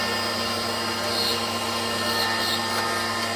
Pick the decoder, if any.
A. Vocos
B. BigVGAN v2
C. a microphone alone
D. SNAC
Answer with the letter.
C